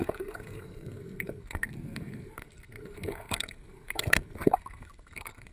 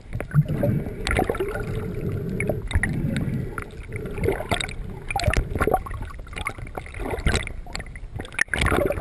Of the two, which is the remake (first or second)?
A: first